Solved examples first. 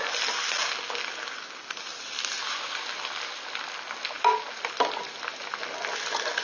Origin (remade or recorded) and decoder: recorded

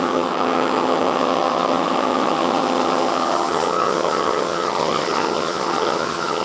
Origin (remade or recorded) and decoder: remade, vocoder, HiFi-GAN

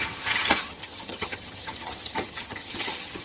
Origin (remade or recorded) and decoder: remade, vocoder, HiFi-GAN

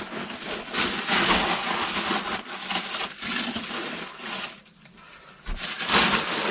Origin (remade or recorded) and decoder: recorded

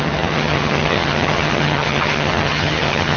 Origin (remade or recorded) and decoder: remade, vocoder, HiFi-GAN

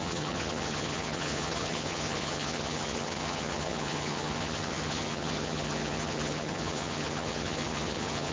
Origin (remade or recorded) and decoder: remade, vocoder, HiFi-GAN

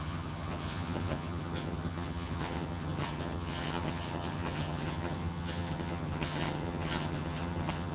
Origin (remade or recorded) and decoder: remade, vocoder, HiFi-GAN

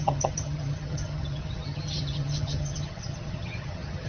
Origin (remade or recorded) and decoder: remade, vocoder, HiFi-GAN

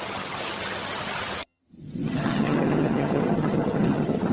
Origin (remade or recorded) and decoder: remade, vocoder, HiFi-GAN